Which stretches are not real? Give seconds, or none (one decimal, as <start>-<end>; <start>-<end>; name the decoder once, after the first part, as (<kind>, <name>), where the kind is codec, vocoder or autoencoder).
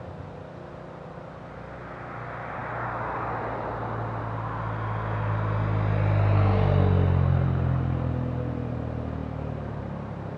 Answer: none